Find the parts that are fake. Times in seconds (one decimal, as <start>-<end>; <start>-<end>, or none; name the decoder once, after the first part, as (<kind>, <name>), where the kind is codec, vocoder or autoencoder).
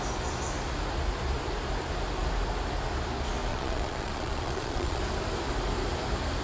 3.5-5.0 (vocoder, Vocos)